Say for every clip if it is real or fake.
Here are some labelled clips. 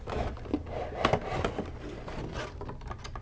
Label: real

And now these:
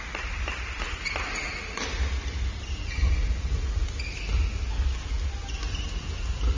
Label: real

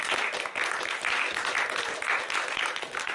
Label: real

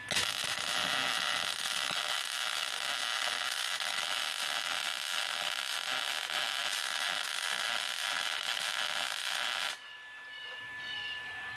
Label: real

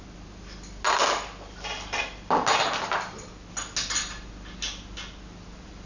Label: real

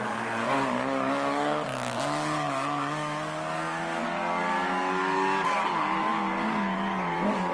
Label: fake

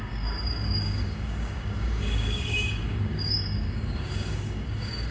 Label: fake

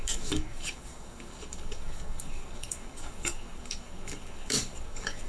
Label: fake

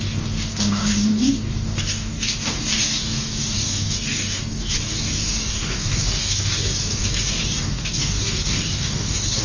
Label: fake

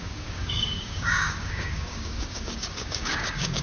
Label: fake